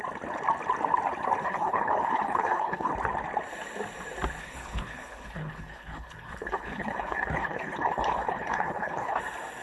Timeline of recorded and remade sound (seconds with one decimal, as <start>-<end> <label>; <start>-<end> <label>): 0.0-1.4 recorded; 1.4-2.9 remade; 2.9-4.4 recorded; 4.4-9.2 remade; 9.2-9.6 recorded